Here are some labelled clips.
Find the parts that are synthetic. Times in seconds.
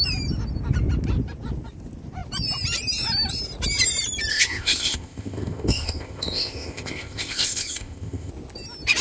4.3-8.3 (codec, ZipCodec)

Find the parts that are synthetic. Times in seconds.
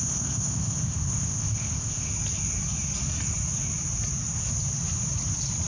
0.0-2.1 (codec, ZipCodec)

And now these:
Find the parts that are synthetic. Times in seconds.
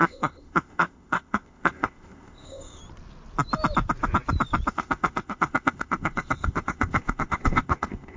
0.0-2.8 (codec, ZipCodec); 4.7-8.2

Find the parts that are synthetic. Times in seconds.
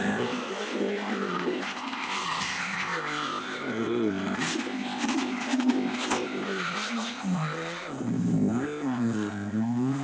0.0-10.0 (codec, ZipCodec)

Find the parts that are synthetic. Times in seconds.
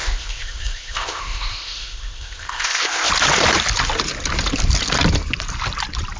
0.0-3.1 (codec, ZipCodec)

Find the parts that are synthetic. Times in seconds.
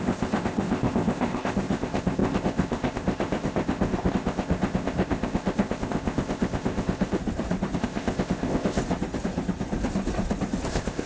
0.0-7.2 (codec, ZipCodec); 7.8-8.8; 10.7-11.1